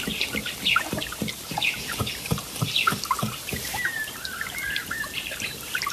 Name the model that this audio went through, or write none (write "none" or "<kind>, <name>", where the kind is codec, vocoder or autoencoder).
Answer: vocoder, BigVGAN v2